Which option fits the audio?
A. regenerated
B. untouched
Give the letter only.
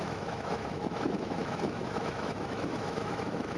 A